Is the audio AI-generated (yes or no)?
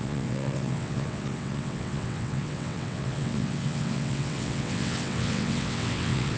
yes